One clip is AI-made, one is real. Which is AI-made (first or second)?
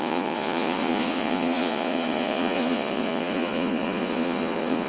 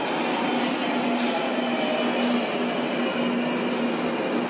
first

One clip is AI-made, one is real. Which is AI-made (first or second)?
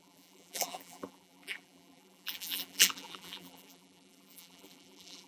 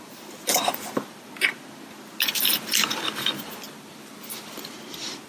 first